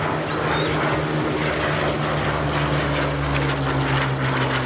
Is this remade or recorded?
recorded